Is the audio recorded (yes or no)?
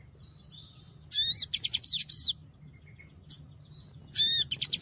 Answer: yes